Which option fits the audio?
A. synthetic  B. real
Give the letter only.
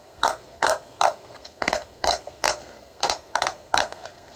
A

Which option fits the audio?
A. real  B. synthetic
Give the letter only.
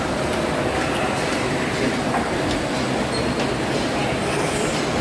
A